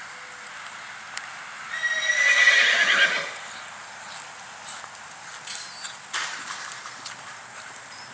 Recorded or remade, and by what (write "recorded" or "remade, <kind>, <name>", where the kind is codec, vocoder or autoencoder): recorded